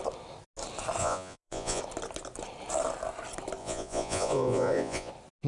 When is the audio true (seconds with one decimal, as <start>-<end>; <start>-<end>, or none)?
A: 0.0-1.0; 1.8-3.6; 5.1-5.5